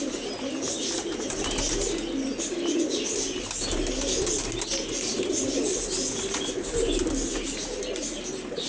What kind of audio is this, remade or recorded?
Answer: recorded